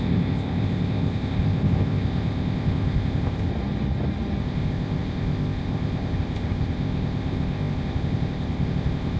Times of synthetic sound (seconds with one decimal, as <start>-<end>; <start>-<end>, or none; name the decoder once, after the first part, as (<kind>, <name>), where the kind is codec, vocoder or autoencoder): 0.0-3.5 (codec, ZipCodec); 4.4-9.2